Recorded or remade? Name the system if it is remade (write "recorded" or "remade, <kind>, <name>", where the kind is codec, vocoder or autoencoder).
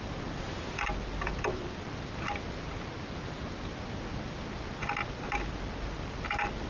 recorded